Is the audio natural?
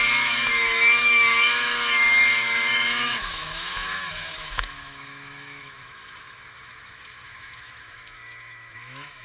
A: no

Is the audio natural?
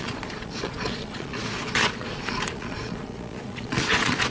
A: no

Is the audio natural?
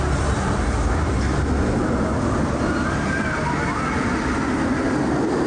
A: yes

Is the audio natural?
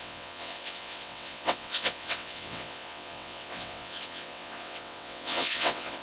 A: no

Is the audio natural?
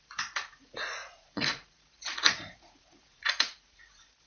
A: no